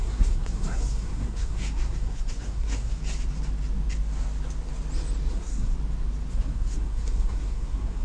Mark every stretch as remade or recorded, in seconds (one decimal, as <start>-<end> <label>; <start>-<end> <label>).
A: 0.0-3.0 remade; 3.0-5.3 recorded; 5.3-5.7 remade; 5.7-6.3 recorded; 6.3-8.0 remade